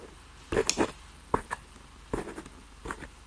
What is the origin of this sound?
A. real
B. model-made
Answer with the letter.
A